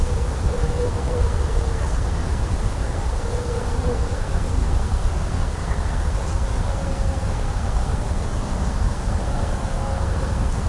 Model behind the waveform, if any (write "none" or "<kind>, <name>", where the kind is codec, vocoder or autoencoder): codec, SNAC